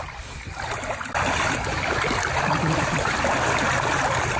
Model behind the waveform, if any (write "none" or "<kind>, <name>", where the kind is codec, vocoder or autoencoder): vocoder, BigVGAN v2